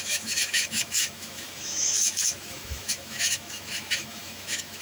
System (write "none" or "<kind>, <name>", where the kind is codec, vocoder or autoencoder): autoencoder, DAC-VAE